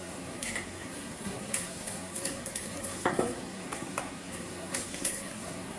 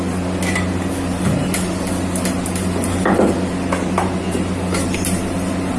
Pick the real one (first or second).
second